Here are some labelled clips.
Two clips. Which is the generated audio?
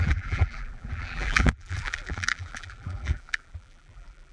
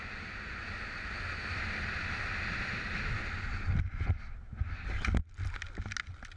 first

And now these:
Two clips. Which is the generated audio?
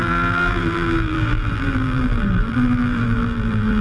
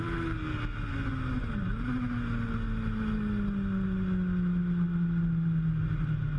first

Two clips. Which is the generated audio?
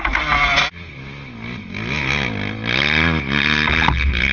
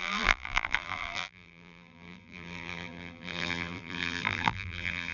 second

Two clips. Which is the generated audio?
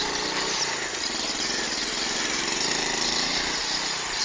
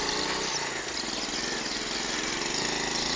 first